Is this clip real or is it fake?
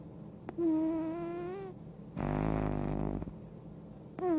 real